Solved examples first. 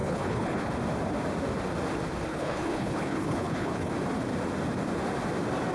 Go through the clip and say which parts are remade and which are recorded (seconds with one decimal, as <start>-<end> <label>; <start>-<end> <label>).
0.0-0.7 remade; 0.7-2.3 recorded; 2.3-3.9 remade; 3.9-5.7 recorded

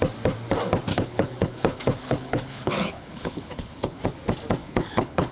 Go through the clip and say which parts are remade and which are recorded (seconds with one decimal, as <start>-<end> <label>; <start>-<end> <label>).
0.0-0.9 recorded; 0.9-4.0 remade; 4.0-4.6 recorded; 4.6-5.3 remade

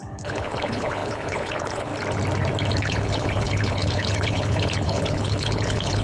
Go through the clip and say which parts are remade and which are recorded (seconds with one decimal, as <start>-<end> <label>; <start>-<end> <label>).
0.0-1.9 remade; 1.9-2.7 recorded; 2.7-6.0 remade